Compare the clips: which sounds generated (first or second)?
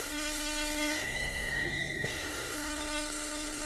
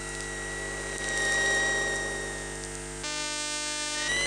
first